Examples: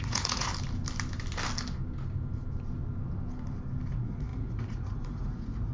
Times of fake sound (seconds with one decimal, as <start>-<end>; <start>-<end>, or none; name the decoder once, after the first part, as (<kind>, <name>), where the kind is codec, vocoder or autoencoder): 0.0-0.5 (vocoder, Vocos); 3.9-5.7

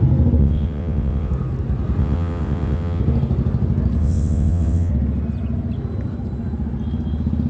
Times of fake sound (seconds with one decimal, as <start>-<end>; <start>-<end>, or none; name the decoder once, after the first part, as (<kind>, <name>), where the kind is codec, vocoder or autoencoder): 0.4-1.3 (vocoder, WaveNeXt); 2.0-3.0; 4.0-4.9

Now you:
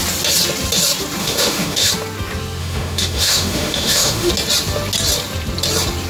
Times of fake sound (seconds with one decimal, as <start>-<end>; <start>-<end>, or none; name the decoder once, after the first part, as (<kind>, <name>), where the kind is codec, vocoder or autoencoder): 1.2-1.9 (autoencoder, DAC-VAE); 2.6-4.3

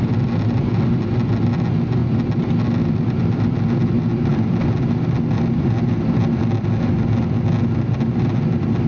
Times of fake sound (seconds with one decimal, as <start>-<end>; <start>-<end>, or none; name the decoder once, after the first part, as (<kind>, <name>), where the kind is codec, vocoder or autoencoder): none

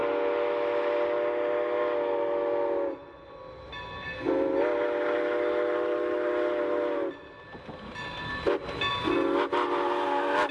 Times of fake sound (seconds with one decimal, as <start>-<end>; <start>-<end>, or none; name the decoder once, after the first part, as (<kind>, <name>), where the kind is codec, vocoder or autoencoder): none

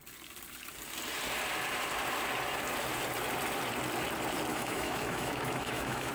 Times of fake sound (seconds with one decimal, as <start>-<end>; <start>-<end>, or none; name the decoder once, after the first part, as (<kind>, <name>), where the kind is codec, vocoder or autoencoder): 4.5-6.1 (autoencoder, DAC-VAE)